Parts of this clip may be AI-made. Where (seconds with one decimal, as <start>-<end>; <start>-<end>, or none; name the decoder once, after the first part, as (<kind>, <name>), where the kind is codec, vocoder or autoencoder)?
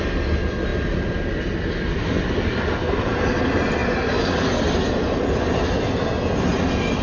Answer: none